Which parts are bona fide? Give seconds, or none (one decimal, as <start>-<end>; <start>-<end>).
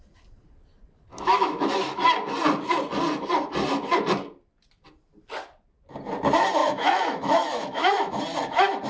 0.0-1.1; 2.0-6.6; 8.2-8.9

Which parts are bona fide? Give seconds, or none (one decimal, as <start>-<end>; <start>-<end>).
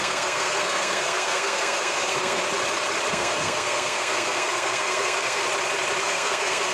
2.4-3.1; 5.4-6.0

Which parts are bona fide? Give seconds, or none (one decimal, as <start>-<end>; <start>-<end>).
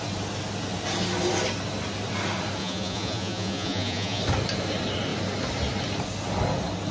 0.0-2.6; 4.2-6.9